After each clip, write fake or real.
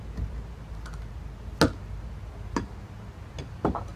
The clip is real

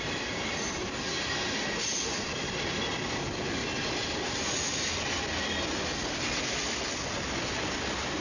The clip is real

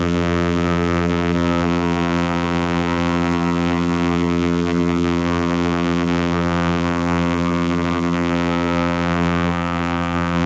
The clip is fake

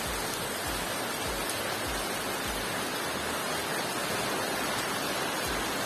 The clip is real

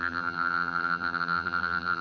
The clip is fake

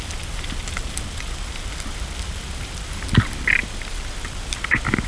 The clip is real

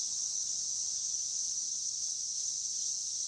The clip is real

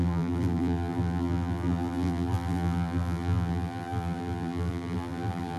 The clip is fake